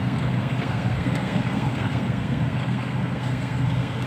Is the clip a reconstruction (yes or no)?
yes